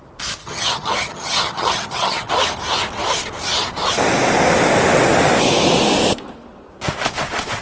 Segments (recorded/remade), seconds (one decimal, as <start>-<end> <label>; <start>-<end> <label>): 0.0-0.4 recorded; 0.4-2.3 remade; 2.3-7.6 recorded